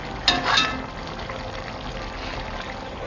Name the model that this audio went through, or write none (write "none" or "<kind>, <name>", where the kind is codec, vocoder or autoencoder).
none